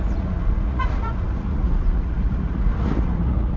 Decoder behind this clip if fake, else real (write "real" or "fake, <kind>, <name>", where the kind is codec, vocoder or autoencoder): fake, vocoder, Vocos